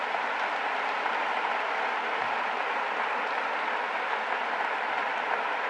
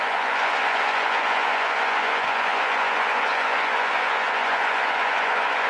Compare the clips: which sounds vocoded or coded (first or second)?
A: second